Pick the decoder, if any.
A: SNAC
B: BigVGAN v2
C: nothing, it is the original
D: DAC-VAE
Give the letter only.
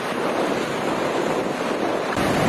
C